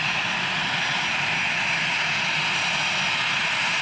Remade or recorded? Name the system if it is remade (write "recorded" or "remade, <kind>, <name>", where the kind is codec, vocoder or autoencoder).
recorded